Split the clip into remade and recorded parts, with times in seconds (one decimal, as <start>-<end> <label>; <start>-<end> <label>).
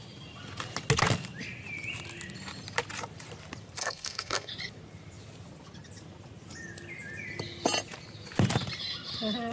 0.0-3.8 recorded; 3.8-4.5 remade; 4.5-9.5 recorded